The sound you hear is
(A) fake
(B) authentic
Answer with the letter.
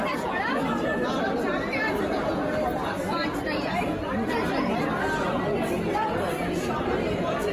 B